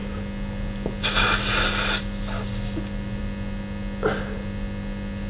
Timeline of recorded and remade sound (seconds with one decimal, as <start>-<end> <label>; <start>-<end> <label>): 0.0-5.3 recorded